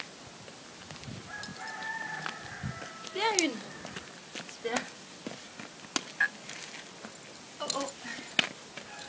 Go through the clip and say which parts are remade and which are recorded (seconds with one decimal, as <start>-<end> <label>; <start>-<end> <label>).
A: 0.0-9.1 recorded